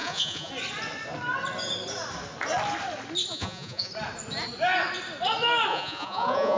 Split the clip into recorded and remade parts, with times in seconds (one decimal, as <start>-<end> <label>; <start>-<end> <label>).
0.0-0.5 remade; 0.5-3.3 recorded; 3.3-3.9 remade; 3.9-5.7 recorded; 5.7-6.6 remade